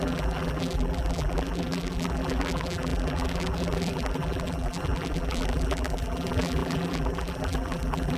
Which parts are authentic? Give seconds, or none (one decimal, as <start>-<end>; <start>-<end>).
none